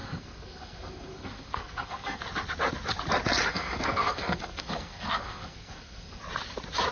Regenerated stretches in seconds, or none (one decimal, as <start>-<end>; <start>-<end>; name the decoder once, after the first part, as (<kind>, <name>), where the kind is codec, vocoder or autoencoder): 0.0-2.2 (codec, SNAC); 3.5-6.2